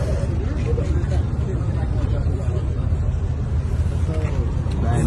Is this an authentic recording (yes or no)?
yes